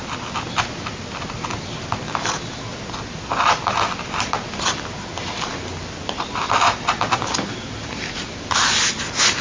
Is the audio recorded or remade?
recorded